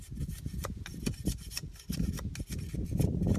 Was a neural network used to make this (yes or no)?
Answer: no